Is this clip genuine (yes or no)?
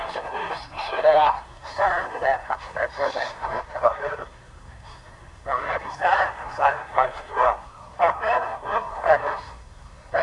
no